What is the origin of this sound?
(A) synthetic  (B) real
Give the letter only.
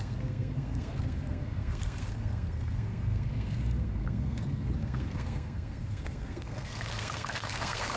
A